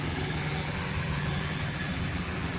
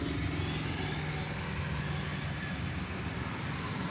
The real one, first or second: second